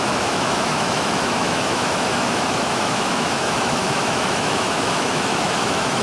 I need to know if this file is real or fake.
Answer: fake